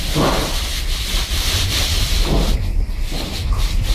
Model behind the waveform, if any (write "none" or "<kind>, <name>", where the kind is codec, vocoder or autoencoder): none